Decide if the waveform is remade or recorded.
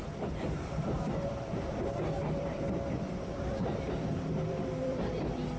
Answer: remade